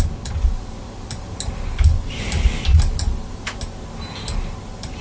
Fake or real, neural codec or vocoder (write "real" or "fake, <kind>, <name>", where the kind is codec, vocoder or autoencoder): real